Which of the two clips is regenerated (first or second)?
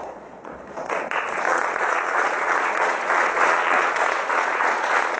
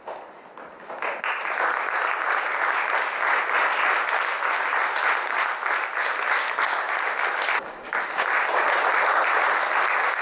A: first